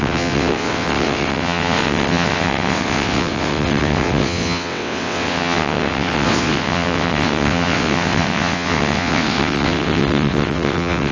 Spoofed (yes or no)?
yes